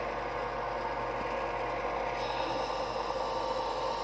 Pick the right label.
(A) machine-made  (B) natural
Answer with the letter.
B